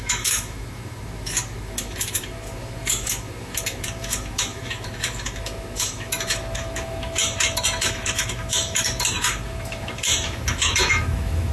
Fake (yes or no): yes